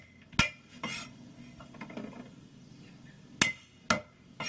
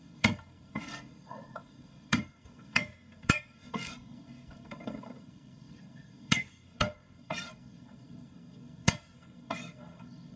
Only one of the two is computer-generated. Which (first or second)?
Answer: second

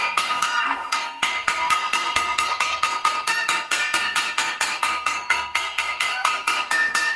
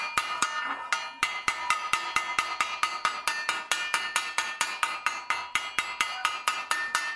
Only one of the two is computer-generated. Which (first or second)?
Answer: first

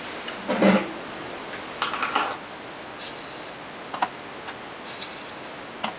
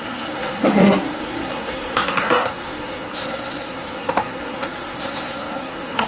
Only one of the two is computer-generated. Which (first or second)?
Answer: second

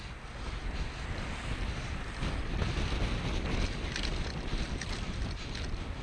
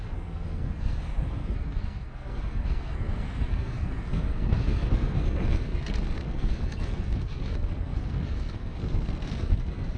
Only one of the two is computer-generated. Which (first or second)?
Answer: second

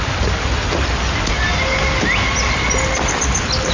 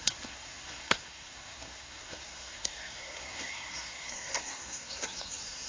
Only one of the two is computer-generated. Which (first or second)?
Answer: second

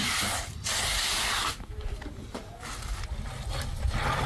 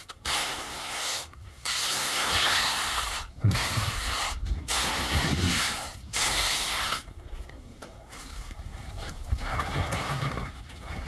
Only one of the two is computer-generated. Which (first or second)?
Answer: second